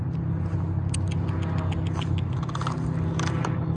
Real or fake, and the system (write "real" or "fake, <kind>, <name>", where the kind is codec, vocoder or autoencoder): real